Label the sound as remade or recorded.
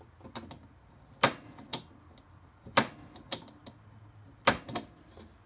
recorded